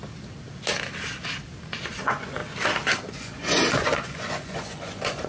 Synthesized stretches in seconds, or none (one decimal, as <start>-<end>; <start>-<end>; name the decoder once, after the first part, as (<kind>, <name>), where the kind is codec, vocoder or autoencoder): 2.0-2.4 (vocoder, Vocos); 3.1-5.3